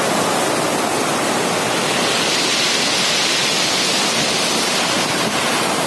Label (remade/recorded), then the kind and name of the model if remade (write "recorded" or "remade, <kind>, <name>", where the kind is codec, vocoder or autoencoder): recorded